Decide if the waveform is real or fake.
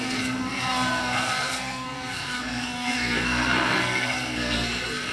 fake